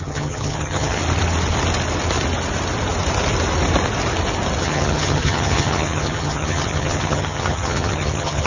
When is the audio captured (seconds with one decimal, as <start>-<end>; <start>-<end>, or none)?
1.0-4.6